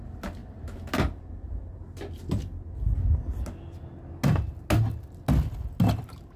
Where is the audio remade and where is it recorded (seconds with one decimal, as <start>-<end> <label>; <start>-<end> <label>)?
0.0-6.4 recorded